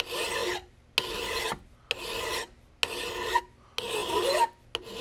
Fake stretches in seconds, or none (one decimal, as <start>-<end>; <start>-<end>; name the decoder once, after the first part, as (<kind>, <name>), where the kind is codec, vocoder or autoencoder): none